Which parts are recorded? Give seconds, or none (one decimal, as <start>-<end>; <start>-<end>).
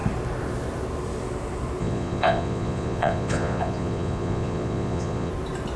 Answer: 0.0-1.8; 5.3-5.8